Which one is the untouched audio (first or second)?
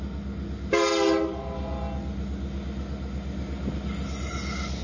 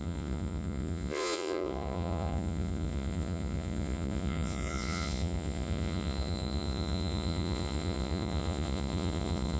first